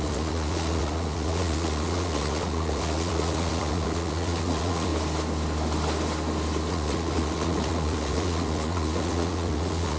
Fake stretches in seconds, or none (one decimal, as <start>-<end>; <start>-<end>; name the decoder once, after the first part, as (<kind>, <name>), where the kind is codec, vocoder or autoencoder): 0.0-4.9 (vocoder, Vocos); 6.7-10.0